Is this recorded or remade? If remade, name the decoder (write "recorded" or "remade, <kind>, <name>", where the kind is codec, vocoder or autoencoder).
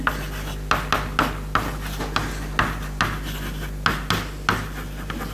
recorded